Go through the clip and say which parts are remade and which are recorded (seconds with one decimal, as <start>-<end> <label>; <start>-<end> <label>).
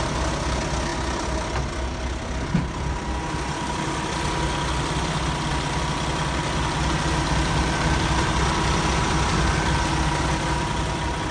0.0-11.3 recorded